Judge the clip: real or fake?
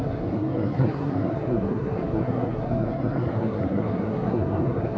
fake